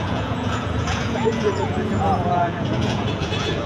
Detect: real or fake fake